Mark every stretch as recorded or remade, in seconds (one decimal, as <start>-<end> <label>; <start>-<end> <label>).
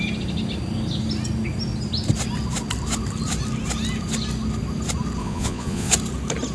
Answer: 0.0-5.2 recorded; 5.2-5.9 remade; 5.9-6.5 recorded